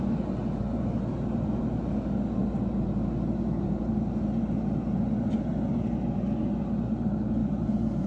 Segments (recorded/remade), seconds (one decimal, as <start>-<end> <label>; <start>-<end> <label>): 0.0-7.4 recorded; 7.4-8.1 remade

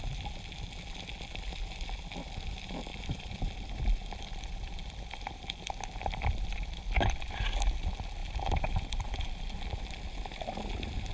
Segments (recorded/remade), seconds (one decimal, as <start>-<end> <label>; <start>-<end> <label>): 0.0-2.9 recorded; 2.9-5.7 remade; 5.7-8.2 recorded; 8.2-9.8 remade; 9.8-11.1 recorded

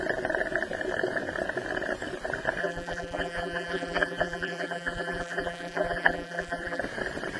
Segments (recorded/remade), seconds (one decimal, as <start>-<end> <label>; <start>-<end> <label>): 0.0-2.6 recorded; 2.6-6.8 remade; 6.8-7.4 recorded